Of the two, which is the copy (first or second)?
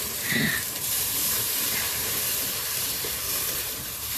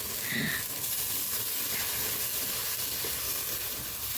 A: first